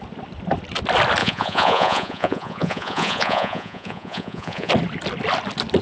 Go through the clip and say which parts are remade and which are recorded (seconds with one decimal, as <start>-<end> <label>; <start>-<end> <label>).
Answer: 0.0-1.2 recorded; 1.2-4.7 remade; 4.7-5.8 recorded